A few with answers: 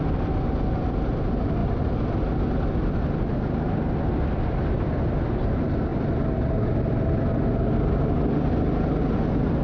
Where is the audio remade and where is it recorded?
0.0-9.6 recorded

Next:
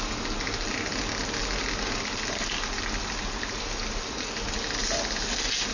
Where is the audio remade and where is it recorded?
0.0-5.7 recorded

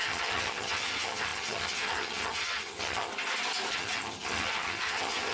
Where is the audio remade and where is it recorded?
0.0-3.1 remade; 3.1-3.7 recorded; 3.7-5.3 remade

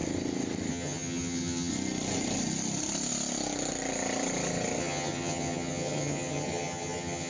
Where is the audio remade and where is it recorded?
0.0-0.7 recorded; 0.7-1.7 remade; 1.7-4.8 recorded; 4.8-7.3 remade

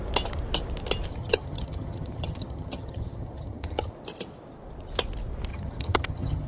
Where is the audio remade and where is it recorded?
0.0-1.1 recorded; 1.1-3.9 remade; 3.9-5.5 recorded; 5.5-6.5 remade

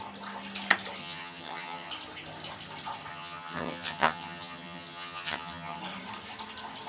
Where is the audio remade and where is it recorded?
0.0-1.0 recorded; 1.0-1.9 remade; 1.9-3.1 recorded; 3.1-5.8 remade; 5.8-6.9 recorded